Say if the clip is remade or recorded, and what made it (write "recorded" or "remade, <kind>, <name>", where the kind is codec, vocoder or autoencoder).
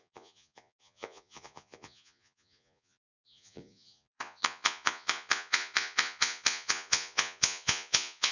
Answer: remade, vocoder, Vocos